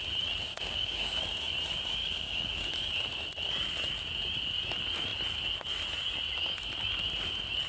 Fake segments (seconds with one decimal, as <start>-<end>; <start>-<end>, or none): 0.5-1.2; 2.0-2.7